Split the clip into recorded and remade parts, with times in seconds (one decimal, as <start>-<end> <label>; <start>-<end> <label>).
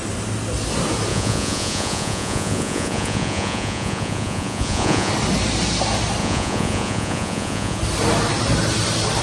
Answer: 0.0-1.1 recorded; 1.1-5.1 remade; 5.1-6.2 recorded; 6.2-7.8 remade; 7.8-9.2 recorded